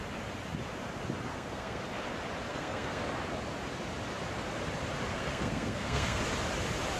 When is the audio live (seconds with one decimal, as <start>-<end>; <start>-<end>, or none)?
0.0-1.3; 1.8-2.5; 3.0-5.1; 6.2-7.0